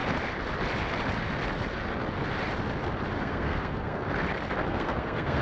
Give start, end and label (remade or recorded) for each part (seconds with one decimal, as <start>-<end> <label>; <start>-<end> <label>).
0.0-3.2 recorded; 3.2-4.0 remade; 4.0-4.7 recorded; 4.7-5.4 remade